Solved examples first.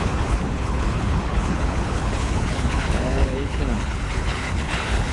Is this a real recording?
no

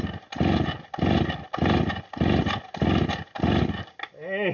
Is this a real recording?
yes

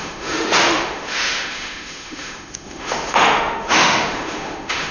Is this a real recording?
no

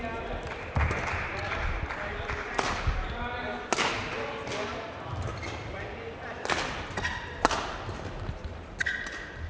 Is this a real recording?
yes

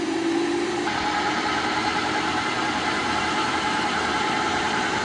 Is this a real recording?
no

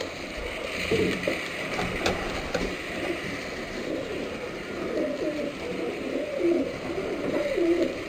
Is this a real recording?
no